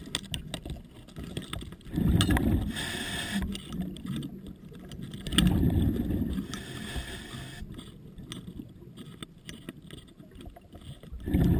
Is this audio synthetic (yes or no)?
no